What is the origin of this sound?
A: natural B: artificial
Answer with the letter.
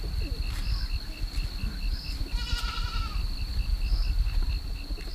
A